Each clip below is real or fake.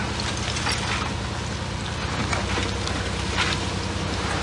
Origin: real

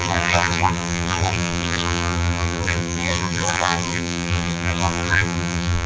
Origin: fake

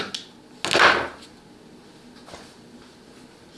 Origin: real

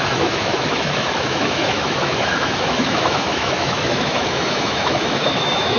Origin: fake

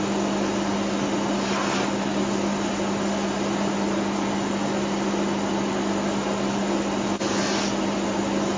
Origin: real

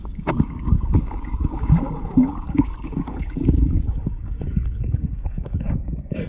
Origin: fake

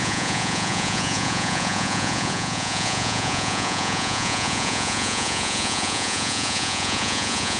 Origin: fake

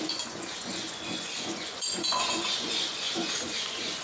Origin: fake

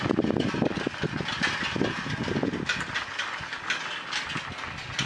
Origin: real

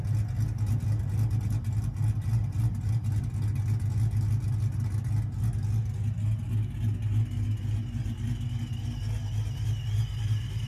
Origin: real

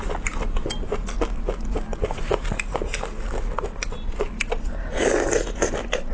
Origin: real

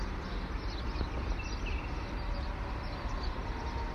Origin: real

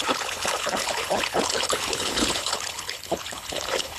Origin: fake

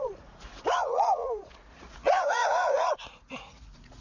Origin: fake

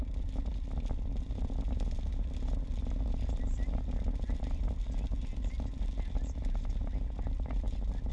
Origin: real